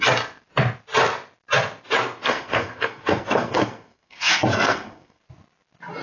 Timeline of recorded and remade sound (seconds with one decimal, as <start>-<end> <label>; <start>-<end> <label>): 0.0-2.2 recorded; 2.2-5.2 remade; 5.2-6.0 recorded